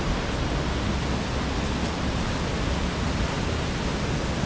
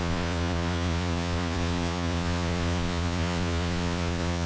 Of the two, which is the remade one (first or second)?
second